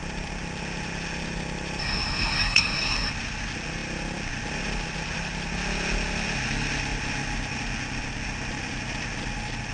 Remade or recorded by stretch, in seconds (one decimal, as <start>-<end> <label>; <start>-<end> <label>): 0.0-1.8 recorded; 1.8-3.1 remade; 3.1-9.7 recorded